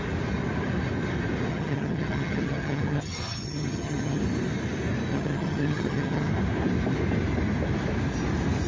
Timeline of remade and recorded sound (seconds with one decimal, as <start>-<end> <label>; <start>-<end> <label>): 0.0-1.5 recorded; 1.5-4.2 remade; 4.2-5.1 recorded; 5.1-6.3 remade; 6.3-8.7 recorded